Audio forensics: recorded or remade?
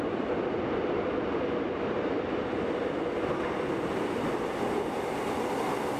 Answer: recorded